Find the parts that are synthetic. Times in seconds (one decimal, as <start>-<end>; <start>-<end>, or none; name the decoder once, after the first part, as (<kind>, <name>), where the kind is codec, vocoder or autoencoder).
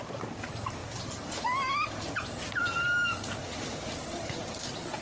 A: none